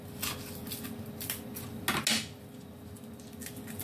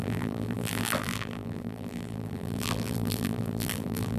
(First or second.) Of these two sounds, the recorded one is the first